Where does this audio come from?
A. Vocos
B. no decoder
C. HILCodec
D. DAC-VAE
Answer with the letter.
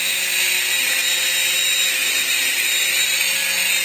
B